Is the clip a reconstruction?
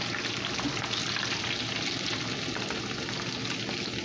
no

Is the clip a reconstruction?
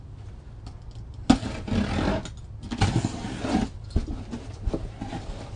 no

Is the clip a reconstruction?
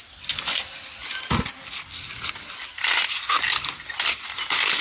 no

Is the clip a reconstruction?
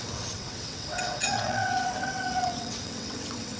yes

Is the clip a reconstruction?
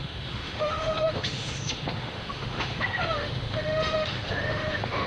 yes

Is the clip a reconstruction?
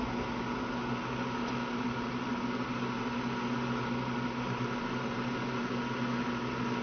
no